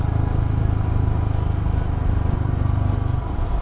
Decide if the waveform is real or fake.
real